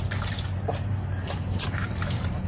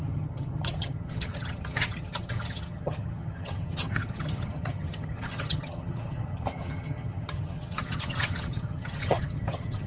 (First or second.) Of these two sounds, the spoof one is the second